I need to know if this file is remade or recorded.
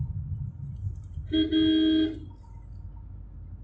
recorded